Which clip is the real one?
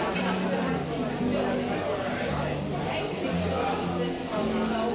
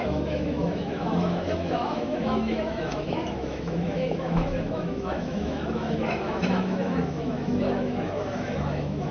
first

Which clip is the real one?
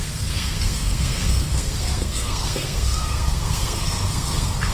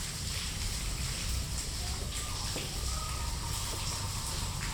second